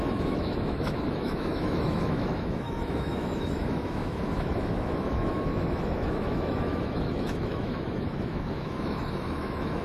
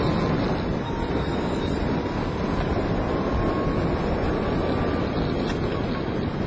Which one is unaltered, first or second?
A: second